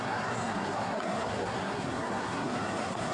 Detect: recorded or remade remade